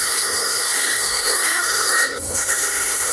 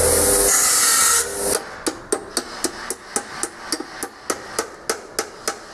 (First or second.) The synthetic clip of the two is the first